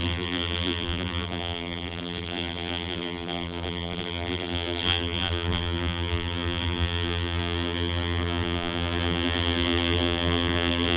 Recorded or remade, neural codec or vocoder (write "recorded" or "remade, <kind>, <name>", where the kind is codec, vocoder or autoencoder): remade, vocoder, BigVGAN v2